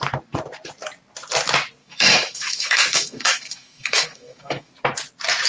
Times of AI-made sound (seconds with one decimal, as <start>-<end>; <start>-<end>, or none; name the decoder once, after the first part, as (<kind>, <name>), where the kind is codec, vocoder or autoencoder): 1.8-4.7 (autoencoder, DAC-VAE)